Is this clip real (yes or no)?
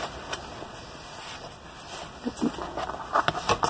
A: yes